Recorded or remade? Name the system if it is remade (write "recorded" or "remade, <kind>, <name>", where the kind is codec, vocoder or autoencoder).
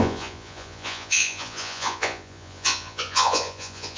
remade, vocoder, Vocos